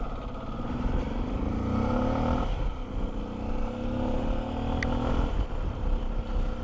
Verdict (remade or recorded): recorded